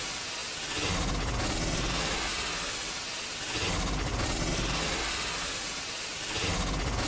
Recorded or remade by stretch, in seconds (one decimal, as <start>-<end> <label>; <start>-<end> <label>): 0.0-7.1 recorded